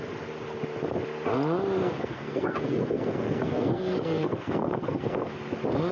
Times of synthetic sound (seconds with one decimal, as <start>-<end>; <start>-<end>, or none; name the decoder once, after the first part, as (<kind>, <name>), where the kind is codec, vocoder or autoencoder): 1.8-5.3 (codec, SNAC)